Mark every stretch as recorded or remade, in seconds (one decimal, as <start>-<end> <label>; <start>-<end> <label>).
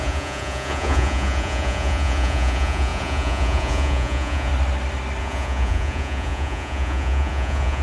0.0-4.5 remade; 4.5-5.2 recorded; 5.2-7.8 remade